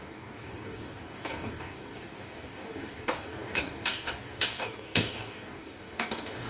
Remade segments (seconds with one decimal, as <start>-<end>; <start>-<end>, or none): 0.0-6.5